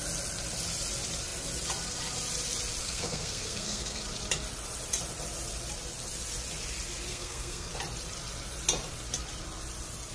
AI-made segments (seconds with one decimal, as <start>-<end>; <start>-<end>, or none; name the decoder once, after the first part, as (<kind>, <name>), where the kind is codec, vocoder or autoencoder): 2.8-4.0 (codec, SNAC); 7.1-7.7